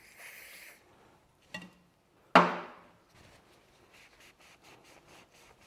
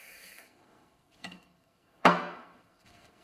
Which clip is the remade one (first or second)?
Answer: second